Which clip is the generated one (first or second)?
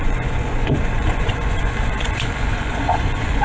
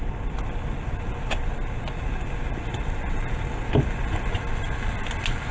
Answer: first